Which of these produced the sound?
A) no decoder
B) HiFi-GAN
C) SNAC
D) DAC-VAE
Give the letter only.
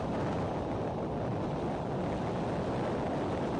A